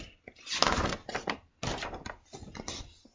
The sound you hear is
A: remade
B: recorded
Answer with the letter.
B